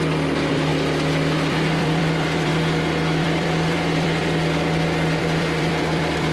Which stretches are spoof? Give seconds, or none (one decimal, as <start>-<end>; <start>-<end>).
0.0-0.7; 1.5-2.5; 3.2-4.2; 5.2-6.3